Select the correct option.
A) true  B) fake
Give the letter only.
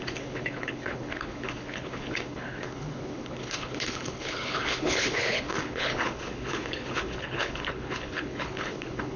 B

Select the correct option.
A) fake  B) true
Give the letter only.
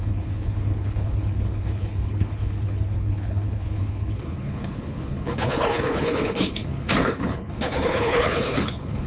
A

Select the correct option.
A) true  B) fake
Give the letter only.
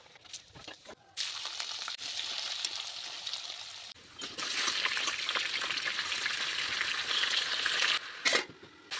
A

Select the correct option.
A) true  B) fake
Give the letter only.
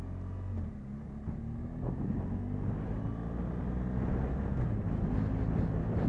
A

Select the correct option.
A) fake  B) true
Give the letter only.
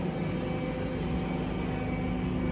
B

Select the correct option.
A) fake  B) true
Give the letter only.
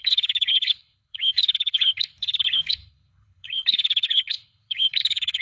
A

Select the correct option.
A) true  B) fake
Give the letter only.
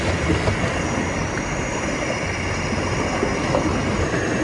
A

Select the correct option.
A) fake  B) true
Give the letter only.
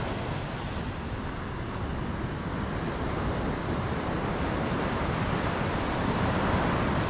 B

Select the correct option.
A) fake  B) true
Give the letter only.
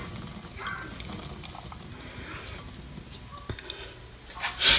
B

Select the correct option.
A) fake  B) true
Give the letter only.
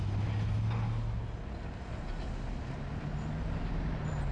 B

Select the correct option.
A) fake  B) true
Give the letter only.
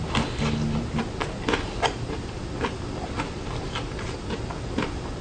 B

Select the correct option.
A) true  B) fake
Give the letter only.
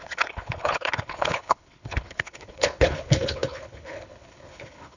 B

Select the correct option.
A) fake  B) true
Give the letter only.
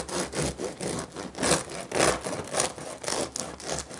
B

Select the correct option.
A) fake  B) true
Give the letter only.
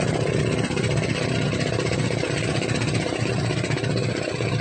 B